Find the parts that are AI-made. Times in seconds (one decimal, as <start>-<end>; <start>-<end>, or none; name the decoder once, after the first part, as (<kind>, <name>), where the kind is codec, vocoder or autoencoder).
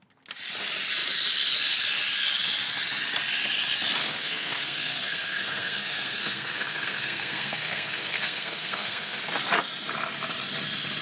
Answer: 4.0-9.2 (codec, SNAC)